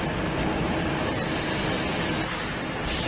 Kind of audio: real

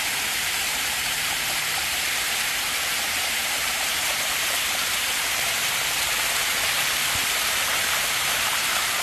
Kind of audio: fake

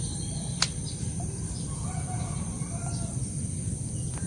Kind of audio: fake